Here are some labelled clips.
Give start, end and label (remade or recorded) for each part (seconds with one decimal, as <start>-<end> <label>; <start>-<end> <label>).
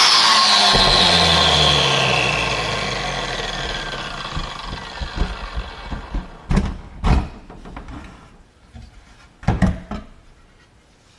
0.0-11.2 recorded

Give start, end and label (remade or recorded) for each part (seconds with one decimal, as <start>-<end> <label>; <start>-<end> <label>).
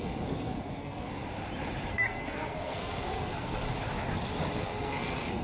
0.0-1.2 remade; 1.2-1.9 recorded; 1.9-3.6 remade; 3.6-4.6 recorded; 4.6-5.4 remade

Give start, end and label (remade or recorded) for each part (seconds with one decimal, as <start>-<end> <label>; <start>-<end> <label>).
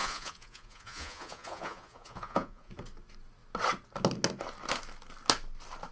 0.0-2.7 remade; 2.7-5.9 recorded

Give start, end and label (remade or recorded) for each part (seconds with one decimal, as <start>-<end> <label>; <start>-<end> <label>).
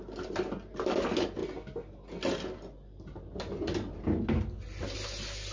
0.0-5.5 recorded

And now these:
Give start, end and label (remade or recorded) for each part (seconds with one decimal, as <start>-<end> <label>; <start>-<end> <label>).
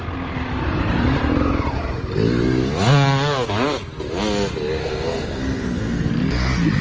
0.0-4.8 recorded; 4.8-6.1 remade; 6.1-6.8 recorded